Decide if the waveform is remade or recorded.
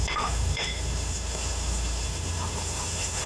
remade